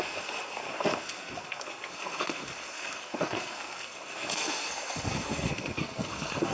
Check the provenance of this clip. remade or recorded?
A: remade